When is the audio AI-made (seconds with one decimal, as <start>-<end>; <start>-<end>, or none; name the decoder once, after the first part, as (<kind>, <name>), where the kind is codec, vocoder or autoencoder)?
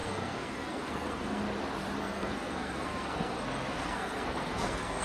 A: 0.0-1.4 (codec, SNAC); 2.0-5.0